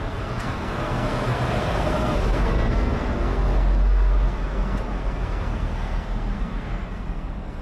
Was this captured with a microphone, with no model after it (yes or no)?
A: no